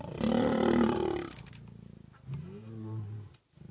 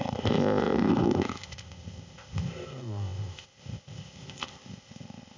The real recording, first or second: first